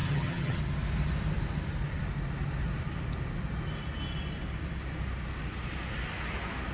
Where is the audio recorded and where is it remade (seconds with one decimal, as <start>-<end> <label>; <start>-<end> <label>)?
0.0-0.6 remade; 0.6-6.7 recorded